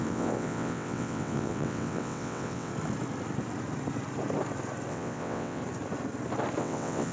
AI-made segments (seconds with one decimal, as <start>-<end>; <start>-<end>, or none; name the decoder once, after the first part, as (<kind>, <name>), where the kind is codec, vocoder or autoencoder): 0.0-2.7 (vocoder, WaveNeXt); 4.9-5.6; 6.6-7.1